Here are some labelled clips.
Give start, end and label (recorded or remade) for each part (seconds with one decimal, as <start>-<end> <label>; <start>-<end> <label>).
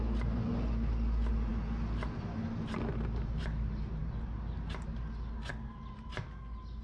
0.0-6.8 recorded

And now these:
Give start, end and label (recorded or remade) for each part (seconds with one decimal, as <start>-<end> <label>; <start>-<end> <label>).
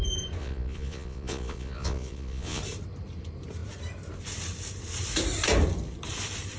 0.0-0.4 recorded; 0.4-2.6 remade; 2.6-6.6 recorded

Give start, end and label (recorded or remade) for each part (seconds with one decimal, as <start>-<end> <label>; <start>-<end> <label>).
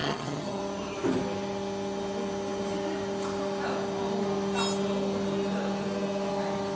0.0-0.6 remade; 0.6-6.8 recorded